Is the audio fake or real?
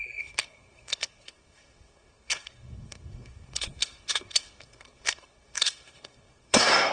fake